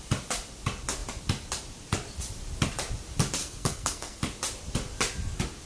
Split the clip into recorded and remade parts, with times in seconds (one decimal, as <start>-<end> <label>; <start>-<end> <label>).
0.0-3.4 recorded; 3.4-4.2 remade; 4.2-5.7 recorded